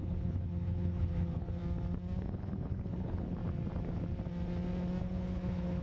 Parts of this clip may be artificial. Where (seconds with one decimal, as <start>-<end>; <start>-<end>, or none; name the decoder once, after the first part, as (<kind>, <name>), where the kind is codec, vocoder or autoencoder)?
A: 0.0-1.6 (codec, HILCodec); 2.3-3.4; 5.0-5.8